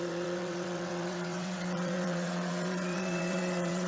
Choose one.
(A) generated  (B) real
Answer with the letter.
A